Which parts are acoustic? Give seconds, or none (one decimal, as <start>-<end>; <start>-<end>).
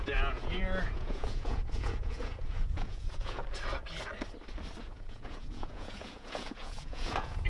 3.4-4.8